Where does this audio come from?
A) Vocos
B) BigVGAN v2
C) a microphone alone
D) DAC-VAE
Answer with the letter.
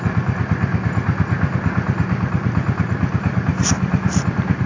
B